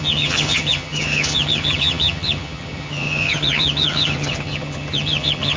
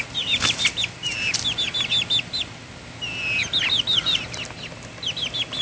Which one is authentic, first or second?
second